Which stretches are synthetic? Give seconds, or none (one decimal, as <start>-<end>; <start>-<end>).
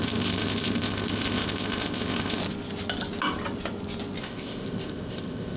0.0-2.4; 4.2-5.6